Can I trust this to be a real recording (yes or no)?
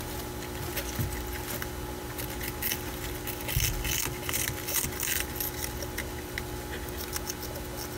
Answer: yes